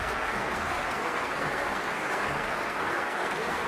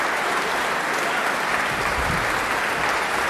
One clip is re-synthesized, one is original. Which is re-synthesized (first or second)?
first